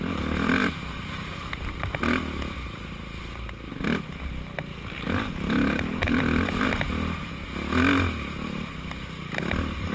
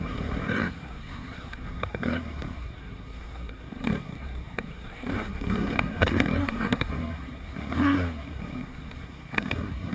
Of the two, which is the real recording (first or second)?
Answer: first